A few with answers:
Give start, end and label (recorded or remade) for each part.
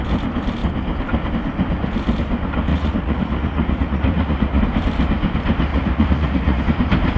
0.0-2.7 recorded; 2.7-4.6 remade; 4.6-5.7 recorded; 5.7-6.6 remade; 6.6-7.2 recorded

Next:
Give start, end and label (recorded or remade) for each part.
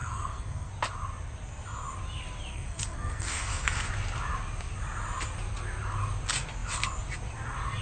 0.0-0.7 remade; 0.7-2.5 recorded; 2.5-3.9 remade; 3.9-7.8 recorded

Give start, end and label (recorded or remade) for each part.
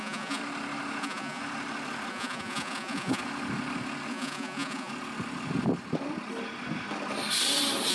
0.0-0.4 remade; 0.4-1.0 recorded; 1.0-1.4 remade; 1.4-2.1 recorded; 2.1-3.2 remade; 3.2-4.1 recorded; 4.1-4.9 remade; 4.9-7.9 recorded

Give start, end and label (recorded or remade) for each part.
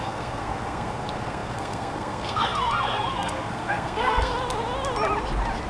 0.0-4.3 remade; 4.3-5.7 recorded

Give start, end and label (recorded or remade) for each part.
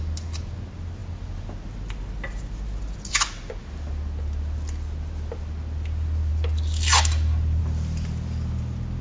0.0-9.0 recorded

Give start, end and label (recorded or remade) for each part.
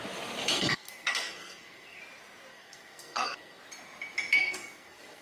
0.0-0.4 recorded; 0.4-2.0 remade; 2.0-2.5 recorded; 2.5-3.6 remade; 3.6-4.4 recorded; 4.4-5.2 remade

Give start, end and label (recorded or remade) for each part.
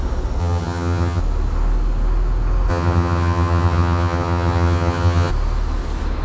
0.0-0.4 recorded; 0.4-1.2 remade; 1.2-2.7 recorded; 2.7-5.3 remade; 5.3-6.2 recorded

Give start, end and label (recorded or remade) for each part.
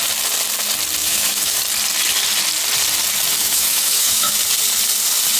0.0-1.0 recorded; 1.0-1.6 remade; 1.6-3.4 recorded; 3.4-4.3 remade; 4.3-5.4 recorded